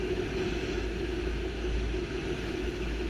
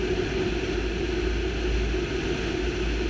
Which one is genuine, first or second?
second